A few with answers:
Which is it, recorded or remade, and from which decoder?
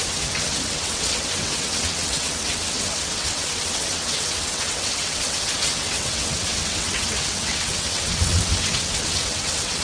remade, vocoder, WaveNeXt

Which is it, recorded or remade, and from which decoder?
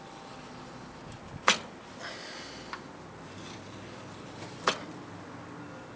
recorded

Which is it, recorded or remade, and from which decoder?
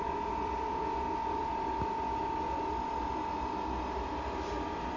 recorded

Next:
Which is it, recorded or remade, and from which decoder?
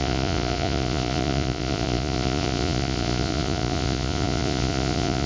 remade, vocoder, Vocos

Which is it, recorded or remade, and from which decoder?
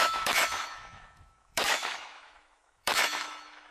remade, autoencoder, DAC-VAE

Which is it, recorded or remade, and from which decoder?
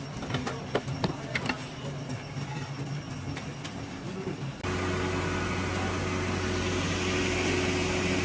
recorded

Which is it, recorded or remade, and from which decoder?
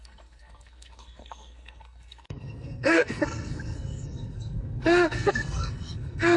remade, codec, SNAC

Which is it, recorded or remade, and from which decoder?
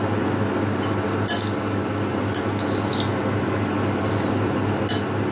recorded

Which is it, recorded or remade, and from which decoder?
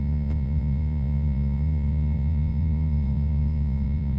remade, vocoder, Vocos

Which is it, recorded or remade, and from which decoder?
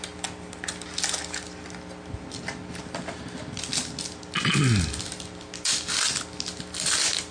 recorded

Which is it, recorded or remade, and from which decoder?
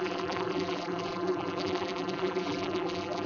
remade, vocoder, BigVGAN v2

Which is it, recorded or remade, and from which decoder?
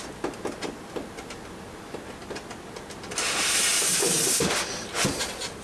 recorded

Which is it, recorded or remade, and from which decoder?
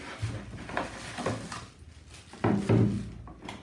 recorded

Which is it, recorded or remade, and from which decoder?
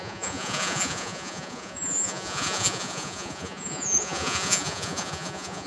remade, vocoder, Vocos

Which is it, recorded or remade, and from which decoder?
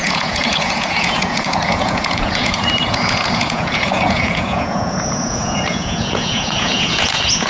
remade, vocoder, Vocos